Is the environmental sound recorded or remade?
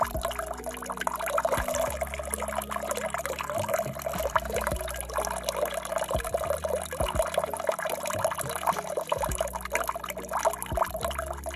recorded